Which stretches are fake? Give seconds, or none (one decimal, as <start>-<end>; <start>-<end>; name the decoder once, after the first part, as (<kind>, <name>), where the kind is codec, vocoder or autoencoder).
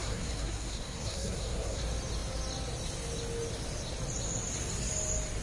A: 0.0-1.8 (codec, SNAC)